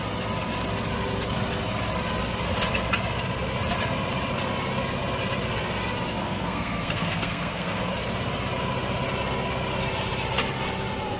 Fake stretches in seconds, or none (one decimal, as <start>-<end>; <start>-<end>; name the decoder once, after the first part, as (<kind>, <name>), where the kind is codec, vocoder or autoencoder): 6.2-7.9 (codec, SNAC)